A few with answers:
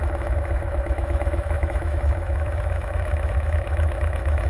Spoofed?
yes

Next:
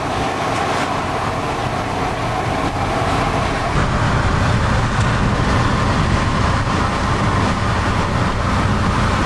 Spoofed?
no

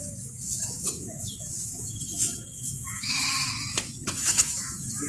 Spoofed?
yes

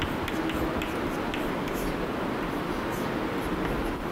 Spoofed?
no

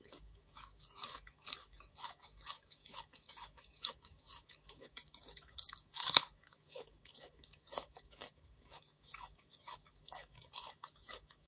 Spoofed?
yes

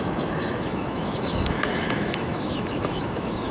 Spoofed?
yes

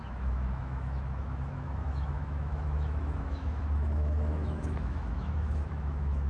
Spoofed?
yes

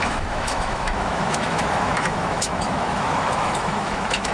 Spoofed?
yes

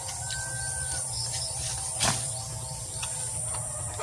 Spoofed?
no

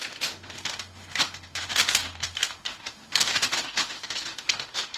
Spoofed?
yes